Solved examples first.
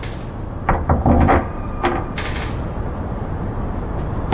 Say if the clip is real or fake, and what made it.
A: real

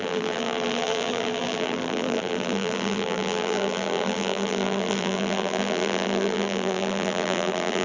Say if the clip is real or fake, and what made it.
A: fake, vocoder, BigVGAN v2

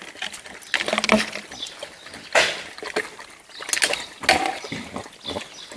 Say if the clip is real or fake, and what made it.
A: real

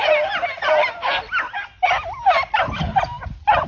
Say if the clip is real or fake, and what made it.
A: real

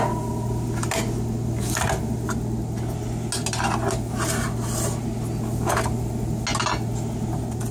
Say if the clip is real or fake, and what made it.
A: real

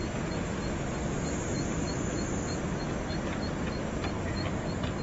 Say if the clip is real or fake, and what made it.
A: real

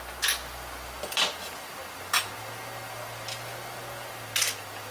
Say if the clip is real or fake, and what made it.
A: real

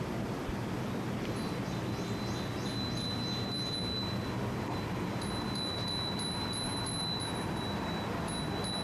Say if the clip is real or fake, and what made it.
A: fake, vocoder, BigVGAN v2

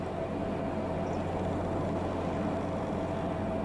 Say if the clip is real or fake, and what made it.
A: real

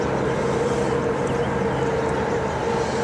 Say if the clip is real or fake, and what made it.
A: real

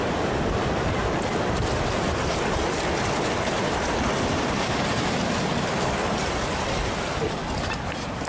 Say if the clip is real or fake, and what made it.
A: real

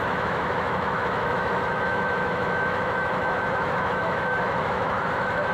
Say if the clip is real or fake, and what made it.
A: fake, autoencoder, DAC-VAE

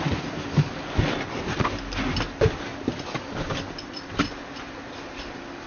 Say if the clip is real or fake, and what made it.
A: real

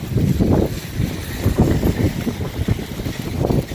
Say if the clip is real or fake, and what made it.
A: real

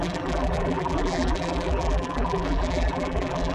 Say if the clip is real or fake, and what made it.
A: fake, vocoder, BigVGAN v2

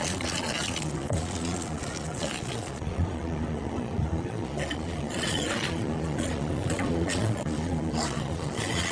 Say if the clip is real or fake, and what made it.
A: fake, vocoder, Vocos